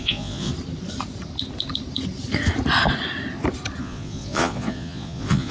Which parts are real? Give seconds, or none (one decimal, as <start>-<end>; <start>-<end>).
0.5-3.8